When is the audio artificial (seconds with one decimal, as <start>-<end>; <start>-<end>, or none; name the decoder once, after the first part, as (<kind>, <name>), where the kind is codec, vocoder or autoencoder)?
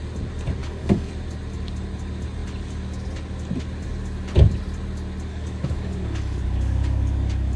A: 0.6-1.1 (codec, DAC); 5.3-7.6